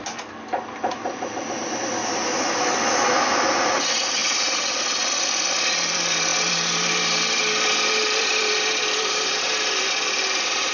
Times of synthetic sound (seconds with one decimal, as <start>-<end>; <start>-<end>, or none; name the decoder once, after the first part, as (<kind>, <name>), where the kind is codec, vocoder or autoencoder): 0.0-2.0 (vocoder, BigVGAN v2); 3.7-4.2; 5.1-10.7

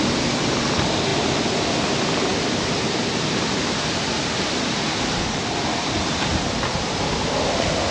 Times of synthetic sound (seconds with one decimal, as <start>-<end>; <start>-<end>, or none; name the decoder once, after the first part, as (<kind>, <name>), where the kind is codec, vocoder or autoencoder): none

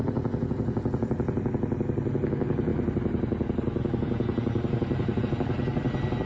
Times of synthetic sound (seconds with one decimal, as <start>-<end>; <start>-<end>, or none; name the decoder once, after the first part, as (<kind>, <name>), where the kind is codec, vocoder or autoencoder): none

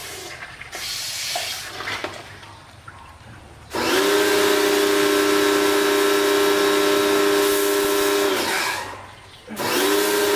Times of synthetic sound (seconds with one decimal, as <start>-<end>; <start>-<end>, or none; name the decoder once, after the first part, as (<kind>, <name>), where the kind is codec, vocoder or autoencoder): 0.0-0.5 (vocoder, BigVGAN v2); 2.0-3.4